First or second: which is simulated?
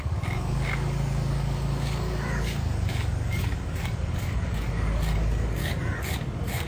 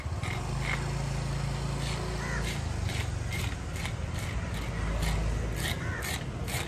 first